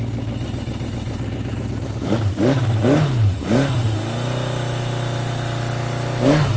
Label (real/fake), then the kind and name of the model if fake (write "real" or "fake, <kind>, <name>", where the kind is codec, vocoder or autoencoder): real